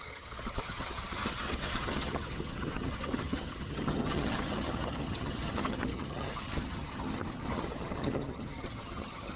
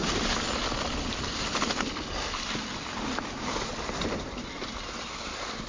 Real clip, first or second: second